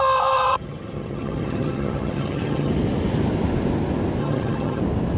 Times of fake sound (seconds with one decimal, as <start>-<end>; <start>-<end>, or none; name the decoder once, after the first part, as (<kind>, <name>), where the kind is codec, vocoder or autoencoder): 0.5-2.7 (vocoder, HiFi-GAN); 4.2-4.8